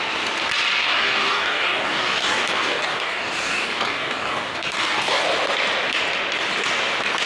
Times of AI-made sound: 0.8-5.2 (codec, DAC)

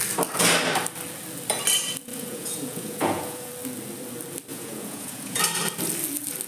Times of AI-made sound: 2.1-3.5 (vocoder, Vocos); 4.5-5.4

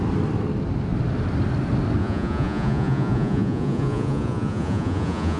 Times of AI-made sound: 2.0-5.4 (vocoder, Vocos)

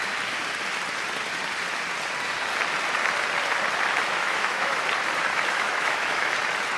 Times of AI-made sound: 4.2-4.8 (autoencoder, DAC-VAE); 5.3-6.3

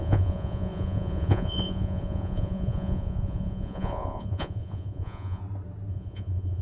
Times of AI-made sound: 0.0-5.4 (vocoder, Vocos); 5.9-6.6